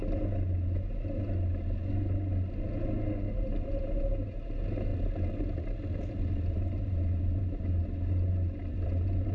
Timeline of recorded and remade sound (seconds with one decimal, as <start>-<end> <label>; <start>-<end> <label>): 0.0-3.3 recorded; 3.3-4.9 remade; 4.9-6.1 recorded; 6.1-7.8 remade; 7.8-8.7 recorded; 8.7-9.3 remade